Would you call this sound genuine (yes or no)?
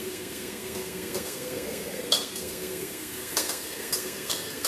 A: no